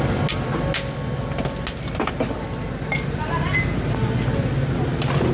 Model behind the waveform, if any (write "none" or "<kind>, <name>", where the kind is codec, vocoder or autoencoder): none